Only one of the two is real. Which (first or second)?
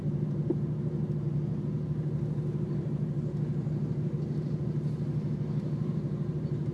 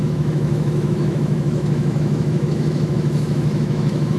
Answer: first